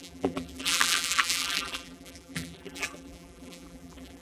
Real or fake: fake